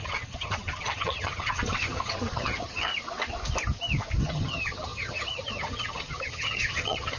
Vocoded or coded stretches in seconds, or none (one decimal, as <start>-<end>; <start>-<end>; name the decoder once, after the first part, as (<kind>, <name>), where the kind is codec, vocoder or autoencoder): 0.0-2.9 (vocoder, HiFi-GAN); 4.2-7.2